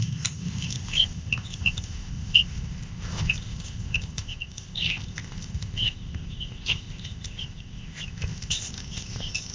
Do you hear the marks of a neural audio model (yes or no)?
yes